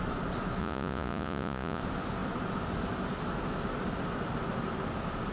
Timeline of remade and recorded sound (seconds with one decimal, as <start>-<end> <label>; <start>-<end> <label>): 0.0-0.6 recorded; 0.6-1.8 remade; 1.8-5.3 recorded

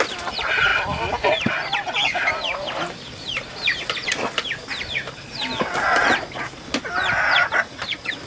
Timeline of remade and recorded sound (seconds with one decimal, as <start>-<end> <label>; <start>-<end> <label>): 0.0-8.3 recorded

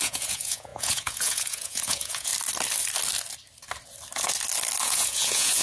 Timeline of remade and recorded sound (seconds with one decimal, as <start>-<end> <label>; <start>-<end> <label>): 0.0-2.3 remade; 2.3-4.8 recorded; 4.8-5.6 remade

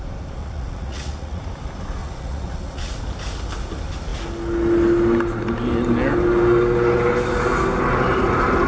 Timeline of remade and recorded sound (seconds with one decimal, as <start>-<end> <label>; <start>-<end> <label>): 0.0-0.4 recorded; 0.4-1.4 remade; 1.4-2.0 recorded; 2.0-3.0 remade; 3.0-8.7 recorded

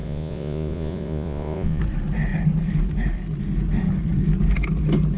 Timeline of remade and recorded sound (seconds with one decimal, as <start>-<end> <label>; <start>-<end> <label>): 0.0-1.8 remade; 1.8-5.2 recorded

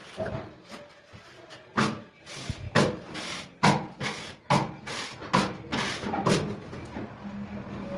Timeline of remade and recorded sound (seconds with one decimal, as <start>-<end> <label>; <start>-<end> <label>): 0.0-8.0 recorded

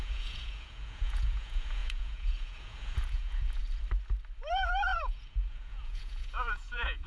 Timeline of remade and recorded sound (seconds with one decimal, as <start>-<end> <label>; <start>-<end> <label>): 0.0-3.6 remade; 3.6-4.5 recorded; 4.5-7.1 remade